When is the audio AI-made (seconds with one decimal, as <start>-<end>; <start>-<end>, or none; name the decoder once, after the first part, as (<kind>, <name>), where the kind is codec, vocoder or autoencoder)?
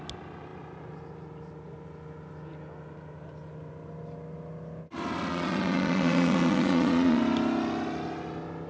5.3-7.2 (vocoder, Vocos)